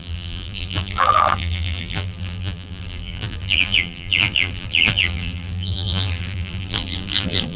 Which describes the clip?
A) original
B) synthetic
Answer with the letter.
B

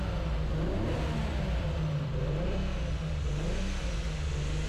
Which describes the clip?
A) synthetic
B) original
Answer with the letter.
B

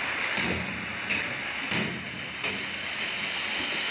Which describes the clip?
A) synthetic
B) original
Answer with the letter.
B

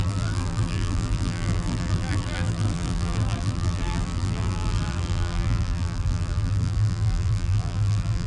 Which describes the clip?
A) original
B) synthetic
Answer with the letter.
B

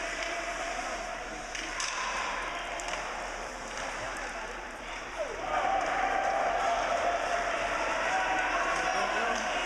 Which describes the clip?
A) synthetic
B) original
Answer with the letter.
A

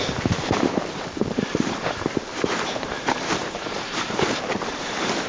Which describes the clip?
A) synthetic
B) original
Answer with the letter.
A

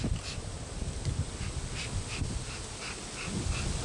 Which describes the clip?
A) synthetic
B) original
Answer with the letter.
B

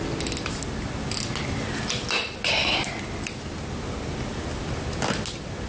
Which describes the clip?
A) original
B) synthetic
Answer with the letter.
A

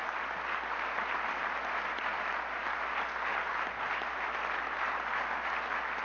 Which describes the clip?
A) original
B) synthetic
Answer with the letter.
A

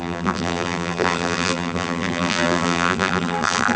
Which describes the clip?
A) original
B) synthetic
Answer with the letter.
B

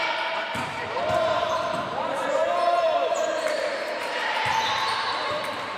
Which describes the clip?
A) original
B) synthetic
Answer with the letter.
B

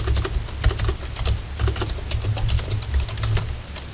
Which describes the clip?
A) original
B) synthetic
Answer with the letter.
A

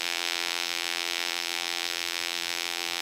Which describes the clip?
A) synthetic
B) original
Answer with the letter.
A